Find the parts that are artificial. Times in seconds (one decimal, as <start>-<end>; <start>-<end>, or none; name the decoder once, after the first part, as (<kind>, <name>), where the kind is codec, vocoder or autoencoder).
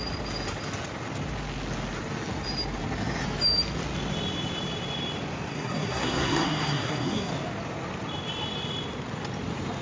5.5-7.3 (codec, SNAC)